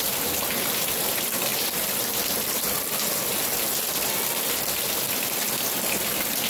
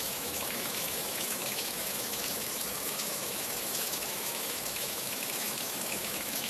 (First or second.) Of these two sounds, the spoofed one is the second